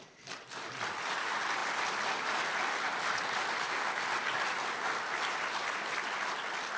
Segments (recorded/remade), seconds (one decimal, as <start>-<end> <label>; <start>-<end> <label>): 0.0-6.8 recorded